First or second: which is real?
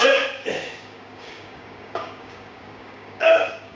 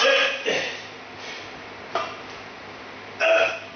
second